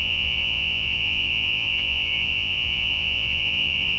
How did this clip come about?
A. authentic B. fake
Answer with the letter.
B